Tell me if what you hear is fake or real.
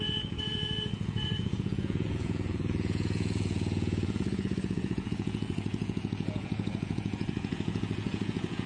fake